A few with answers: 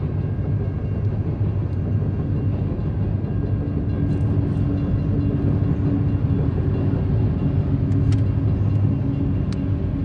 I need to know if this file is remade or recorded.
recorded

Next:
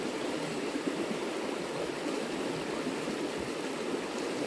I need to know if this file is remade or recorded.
remade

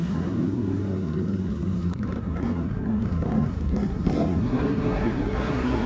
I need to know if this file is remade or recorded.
remade